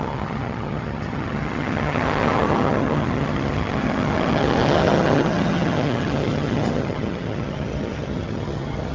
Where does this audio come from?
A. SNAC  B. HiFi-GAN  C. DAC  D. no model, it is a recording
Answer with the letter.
B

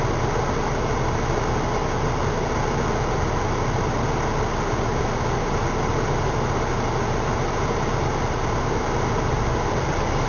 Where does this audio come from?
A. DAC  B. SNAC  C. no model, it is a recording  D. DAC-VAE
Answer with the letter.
C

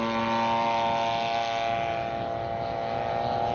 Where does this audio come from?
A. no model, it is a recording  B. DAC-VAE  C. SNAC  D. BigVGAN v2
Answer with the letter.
A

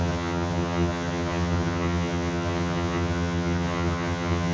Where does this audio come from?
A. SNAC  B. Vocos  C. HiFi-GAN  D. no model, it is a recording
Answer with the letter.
C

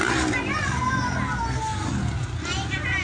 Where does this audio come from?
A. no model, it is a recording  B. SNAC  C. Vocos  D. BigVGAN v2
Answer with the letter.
A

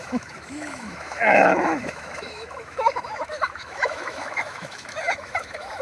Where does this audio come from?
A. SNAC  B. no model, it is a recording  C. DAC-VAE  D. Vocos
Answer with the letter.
C